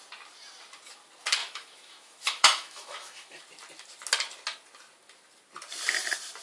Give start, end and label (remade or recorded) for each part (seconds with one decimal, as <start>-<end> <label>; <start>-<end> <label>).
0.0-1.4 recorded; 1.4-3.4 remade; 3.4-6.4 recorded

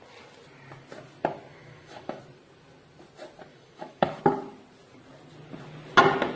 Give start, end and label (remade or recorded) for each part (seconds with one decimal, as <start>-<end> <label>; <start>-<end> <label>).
0.0-1.5 recorded; 1.5-2.2 remade; 2.2-3.5 recorded; 3.5-4.2 remade; 4.2-6.3 recorded

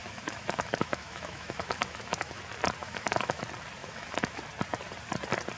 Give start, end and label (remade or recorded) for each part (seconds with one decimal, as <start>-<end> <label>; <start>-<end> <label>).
0.0-2.4 remade; 2.4-2.8 recorded; 2.8-3.4 remade; 3.4-3.8 recorded; 3.8-4.4 remade; 4.4-5.6 recorded

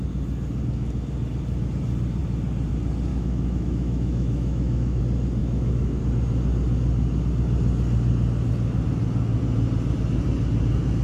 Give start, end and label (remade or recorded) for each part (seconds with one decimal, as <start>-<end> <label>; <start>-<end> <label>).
0.0-3.1 recorded; 3.1-5.0 remade; 5.0-5.4 recorded; 5.4-6.0 remade; 6.0-11.0 recorded

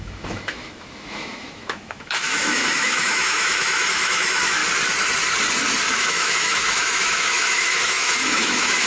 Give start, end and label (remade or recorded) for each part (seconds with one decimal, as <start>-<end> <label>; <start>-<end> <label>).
0.0-4.6 remade; 4.6-5.9 recorded; 5.9-8.9 remade